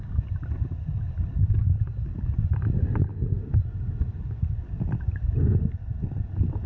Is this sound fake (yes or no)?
no